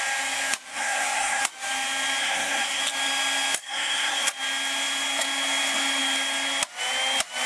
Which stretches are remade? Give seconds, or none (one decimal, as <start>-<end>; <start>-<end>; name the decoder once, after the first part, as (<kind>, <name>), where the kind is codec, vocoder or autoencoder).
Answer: 0.7-1.4 (codec, SNAC); 2.2-2.8; 3.6-4.3

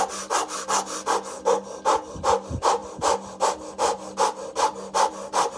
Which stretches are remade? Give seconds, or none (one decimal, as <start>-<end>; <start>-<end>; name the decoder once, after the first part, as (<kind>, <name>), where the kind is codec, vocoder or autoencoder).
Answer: none

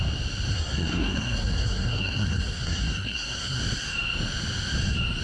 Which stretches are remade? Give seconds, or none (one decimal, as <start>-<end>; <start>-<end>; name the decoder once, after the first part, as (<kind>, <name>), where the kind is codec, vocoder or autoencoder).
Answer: 0.5-3.6 (codec, SNAC)

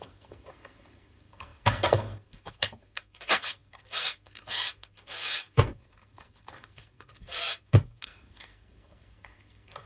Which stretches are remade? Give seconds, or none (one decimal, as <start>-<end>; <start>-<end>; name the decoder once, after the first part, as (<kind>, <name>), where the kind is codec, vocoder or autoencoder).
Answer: 0.0-9.9 (codec, SNAC)

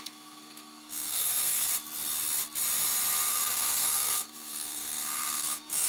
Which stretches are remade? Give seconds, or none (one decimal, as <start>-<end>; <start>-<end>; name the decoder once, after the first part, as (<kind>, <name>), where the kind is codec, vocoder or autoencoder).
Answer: 0.0-1.7 (codec, SNAC); 3.3-5.9